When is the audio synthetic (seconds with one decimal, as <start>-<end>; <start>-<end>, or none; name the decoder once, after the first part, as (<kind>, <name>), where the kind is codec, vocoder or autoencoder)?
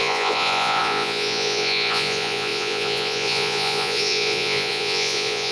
0.0-5.5 (vocoder, Vocos)